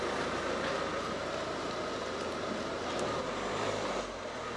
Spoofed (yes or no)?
no